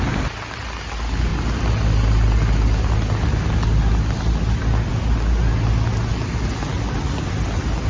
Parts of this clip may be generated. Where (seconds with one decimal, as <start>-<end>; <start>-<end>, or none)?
none